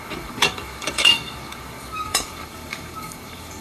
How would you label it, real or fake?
fake